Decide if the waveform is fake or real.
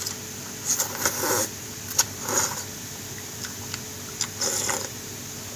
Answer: real